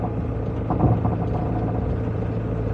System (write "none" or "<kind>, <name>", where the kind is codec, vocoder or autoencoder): none